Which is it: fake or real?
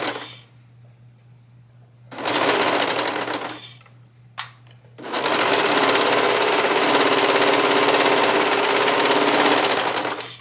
real